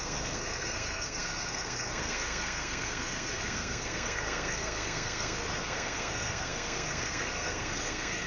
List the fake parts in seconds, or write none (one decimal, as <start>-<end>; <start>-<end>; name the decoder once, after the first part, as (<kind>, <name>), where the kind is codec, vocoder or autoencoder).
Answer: 0.0-8.3 (codec, SNAC)